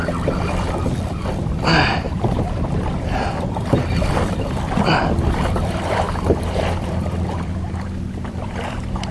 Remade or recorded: remade